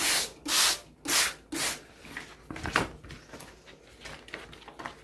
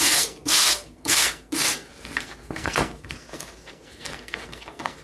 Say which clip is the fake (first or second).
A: second